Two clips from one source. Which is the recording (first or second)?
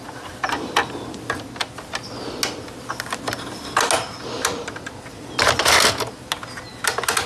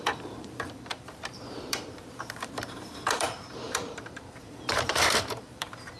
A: first